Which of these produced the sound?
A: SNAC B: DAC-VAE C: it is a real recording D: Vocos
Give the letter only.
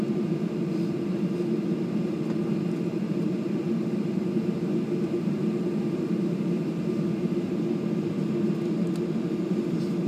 C